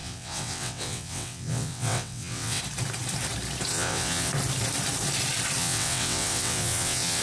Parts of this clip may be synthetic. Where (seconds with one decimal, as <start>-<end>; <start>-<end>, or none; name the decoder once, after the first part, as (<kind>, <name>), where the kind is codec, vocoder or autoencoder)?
0.0-2.6 (vocoder, WaveNeXt); 3.7-4.3; 5.6-7.2